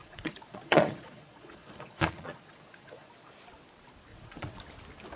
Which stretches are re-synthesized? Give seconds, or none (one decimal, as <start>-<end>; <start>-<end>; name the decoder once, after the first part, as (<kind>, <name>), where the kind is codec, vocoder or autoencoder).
0.0-3.1 (vocoder, Vocos); 4.1-4.6